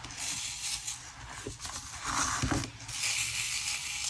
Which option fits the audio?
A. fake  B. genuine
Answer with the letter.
B